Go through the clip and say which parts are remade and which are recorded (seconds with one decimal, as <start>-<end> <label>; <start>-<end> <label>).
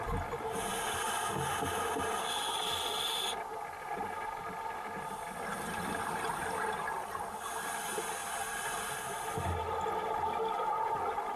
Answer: 0.0-11.4 recorded